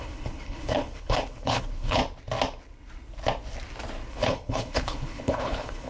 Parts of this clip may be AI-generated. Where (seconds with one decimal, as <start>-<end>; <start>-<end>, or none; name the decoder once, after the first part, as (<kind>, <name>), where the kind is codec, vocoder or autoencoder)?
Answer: 0.0-2.0 (codec, HILCodec); 4.1-5.9